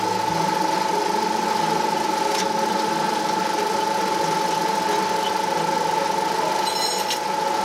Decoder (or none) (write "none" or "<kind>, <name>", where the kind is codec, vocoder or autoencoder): none